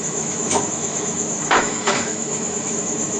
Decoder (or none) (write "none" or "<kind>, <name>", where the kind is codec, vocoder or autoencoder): autoencoder, DAC-VAE